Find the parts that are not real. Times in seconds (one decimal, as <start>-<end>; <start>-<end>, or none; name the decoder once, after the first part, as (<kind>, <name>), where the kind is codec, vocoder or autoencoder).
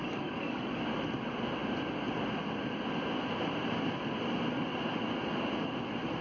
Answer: 0.0-0.8 (codec, DAC)